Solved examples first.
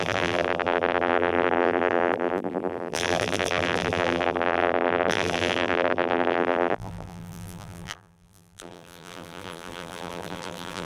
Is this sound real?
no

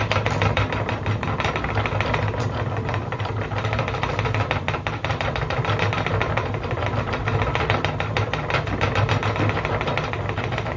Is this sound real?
yes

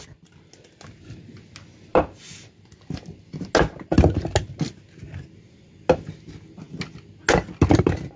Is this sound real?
yes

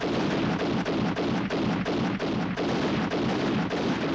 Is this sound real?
yes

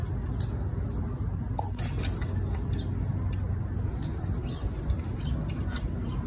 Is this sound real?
yes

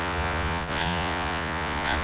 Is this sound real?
no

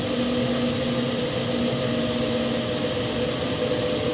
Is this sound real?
yes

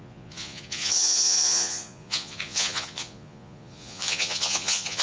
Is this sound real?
no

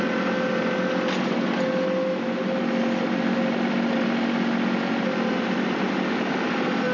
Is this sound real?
yes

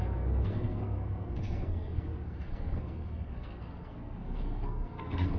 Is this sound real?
no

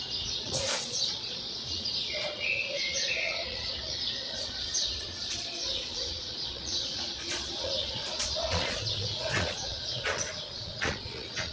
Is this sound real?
no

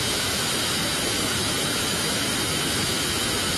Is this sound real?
no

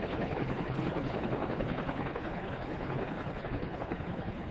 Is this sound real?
no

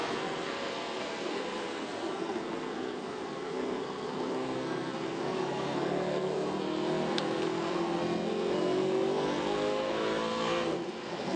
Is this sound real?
no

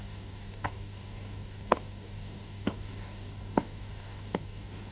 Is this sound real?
no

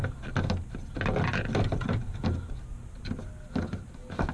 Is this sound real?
yes